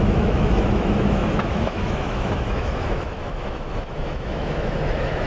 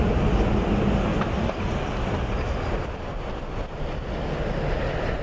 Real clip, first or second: second